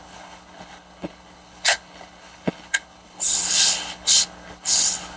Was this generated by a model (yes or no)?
yes